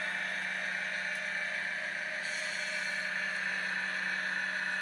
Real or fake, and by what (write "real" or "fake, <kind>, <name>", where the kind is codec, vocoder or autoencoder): real